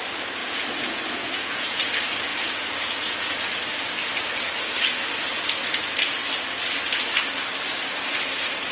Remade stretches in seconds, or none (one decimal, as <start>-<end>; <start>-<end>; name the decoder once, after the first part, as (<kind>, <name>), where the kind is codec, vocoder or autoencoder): 0.4-1.9 (vocoder, Vocos); 2.3-3.5